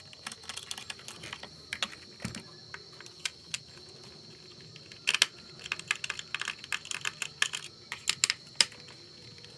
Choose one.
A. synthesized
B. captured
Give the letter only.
B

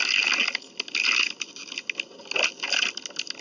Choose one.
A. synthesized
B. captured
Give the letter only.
B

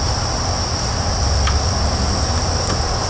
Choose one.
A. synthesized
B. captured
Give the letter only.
B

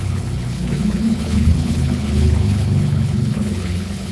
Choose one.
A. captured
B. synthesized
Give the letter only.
B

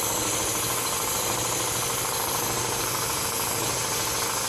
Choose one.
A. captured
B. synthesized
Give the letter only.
A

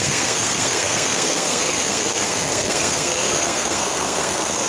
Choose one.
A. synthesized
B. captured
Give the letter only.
A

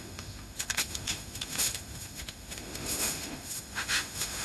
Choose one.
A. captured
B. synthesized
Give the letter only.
B